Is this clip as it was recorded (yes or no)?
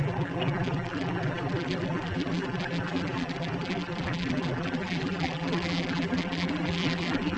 no